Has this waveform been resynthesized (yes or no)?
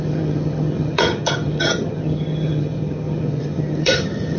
yes